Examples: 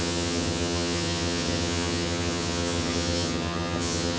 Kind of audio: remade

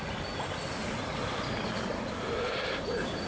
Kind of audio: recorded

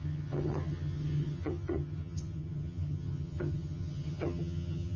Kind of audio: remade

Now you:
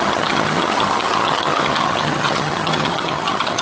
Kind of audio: remade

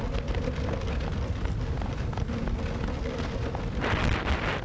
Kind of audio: recorded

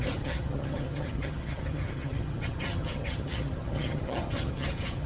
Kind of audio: remade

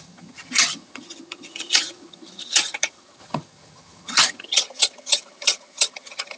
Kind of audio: remade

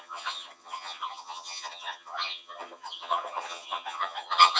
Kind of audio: remade